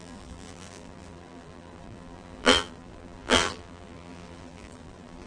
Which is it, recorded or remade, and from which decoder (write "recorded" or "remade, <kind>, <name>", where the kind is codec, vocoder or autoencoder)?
remade, vocoder, BigVGAN v2